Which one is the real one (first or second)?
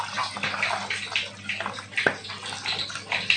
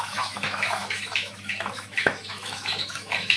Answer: first